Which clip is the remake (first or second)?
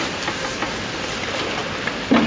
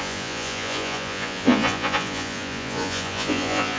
second